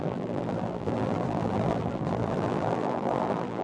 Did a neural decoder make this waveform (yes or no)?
yes